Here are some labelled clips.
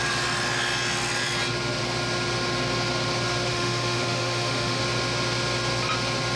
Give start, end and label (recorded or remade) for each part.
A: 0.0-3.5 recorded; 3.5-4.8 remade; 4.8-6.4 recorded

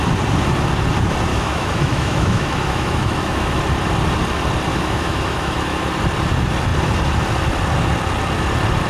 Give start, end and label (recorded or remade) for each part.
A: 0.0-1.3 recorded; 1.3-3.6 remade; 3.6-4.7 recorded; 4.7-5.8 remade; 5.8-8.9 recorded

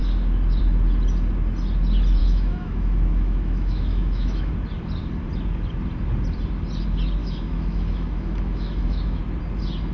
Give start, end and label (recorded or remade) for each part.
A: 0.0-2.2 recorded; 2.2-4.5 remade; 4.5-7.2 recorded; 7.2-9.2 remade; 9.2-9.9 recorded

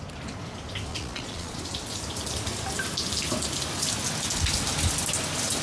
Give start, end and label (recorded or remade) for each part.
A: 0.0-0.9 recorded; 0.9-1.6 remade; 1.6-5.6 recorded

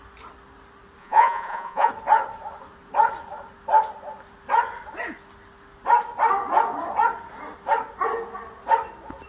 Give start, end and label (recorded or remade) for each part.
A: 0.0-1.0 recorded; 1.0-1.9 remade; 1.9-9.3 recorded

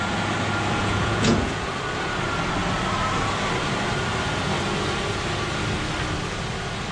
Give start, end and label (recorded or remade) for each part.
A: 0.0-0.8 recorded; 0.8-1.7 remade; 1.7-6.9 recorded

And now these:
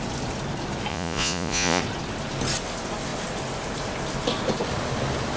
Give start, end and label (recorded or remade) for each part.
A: 0.0-0.9 recorded; 0.9-1.8 remade; 1.8-5.4 recorded